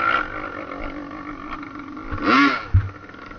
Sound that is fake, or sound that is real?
real